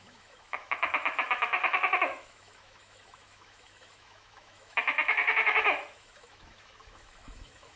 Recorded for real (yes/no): no